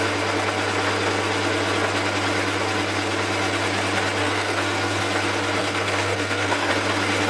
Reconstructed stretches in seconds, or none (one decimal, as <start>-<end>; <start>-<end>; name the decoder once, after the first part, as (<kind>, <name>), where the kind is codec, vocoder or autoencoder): 4.2-5.0 (codec, SNAC); 5.6-6.7